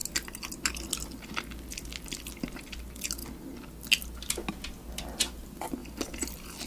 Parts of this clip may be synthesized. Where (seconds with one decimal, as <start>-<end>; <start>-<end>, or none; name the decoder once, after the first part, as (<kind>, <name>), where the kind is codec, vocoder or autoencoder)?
5.8-6.7 (vocoder, BigVGAN v2)